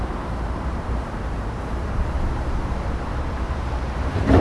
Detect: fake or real fake